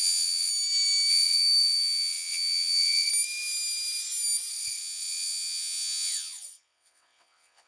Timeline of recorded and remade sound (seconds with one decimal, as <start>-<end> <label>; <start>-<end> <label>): 0.0-0.5 remade; 0.5-1.1 recorded; 1.1-3.1 remade; 3.1-4.5 recorded; 4.5-7.7 remade